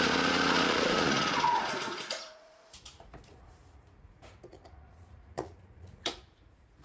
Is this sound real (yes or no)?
no